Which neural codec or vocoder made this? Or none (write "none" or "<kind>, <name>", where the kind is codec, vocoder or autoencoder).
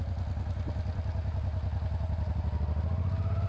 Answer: none